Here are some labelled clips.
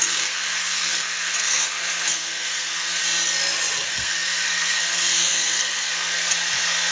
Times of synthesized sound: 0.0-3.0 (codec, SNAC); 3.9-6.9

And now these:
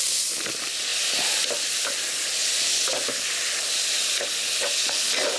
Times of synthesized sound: 0.9-1.6 (vocoder, BigVGAN v2); 2.4-4.3

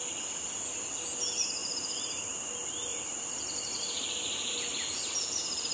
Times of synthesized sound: 1.6-2.5 (vocoder, BigVGAN v2); 2.9-4.6

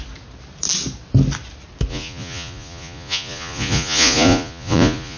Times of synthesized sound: 1.9-5.2 (vocoder, Vocos)

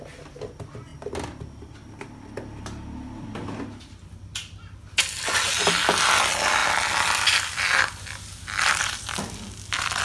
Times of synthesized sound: none

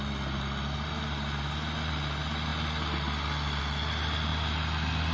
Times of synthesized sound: none